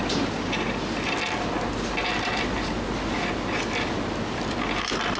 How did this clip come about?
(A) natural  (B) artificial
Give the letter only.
A